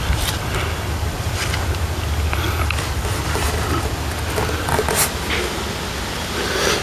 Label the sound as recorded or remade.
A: recorded